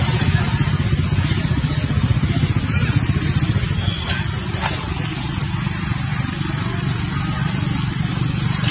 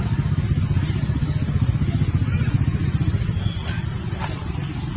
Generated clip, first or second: first